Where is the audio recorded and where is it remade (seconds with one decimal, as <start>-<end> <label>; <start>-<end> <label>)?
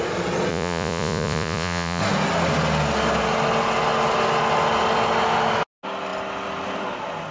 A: 0.0-0.5 recorded; 0.5-2.0 remade; 2.0-7.3 recorded